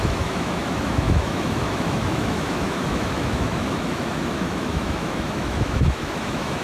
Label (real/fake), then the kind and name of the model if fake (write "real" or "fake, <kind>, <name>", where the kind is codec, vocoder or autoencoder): fake, autoencoder, DAC-VAE